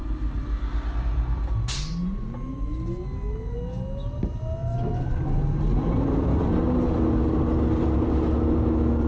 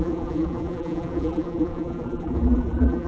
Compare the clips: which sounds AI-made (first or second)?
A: second